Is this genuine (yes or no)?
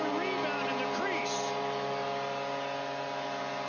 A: yes